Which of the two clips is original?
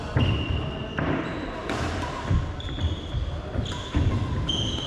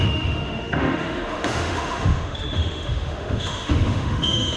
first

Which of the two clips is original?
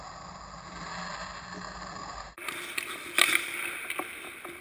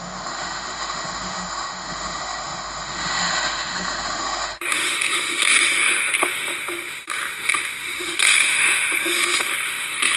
first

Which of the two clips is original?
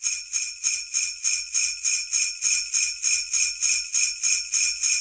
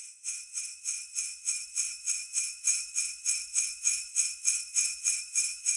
first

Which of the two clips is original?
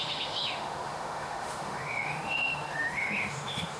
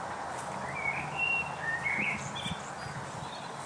second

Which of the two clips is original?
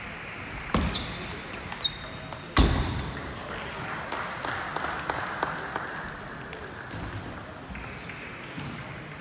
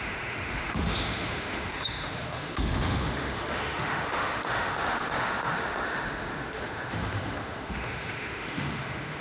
first